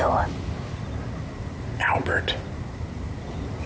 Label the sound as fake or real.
real